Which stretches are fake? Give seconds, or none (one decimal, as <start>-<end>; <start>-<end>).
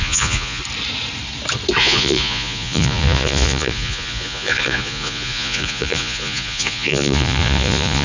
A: 0.0-0.6; 1.8-8.0